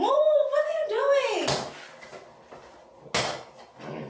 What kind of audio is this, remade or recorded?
recorded